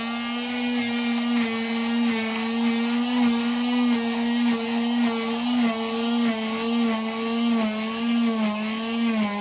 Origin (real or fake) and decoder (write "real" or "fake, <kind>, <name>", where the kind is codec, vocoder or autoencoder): real